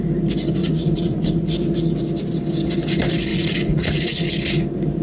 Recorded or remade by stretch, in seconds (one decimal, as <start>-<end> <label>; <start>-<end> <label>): 0.0-0.6 recorded; 0.6-1.5 remade; 1.5-3.3 recorded; 3.3-4.3 remade; 4.3-5.0 recorded